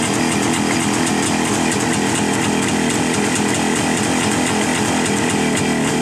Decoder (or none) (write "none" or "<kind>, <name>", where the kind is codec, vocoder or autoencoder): none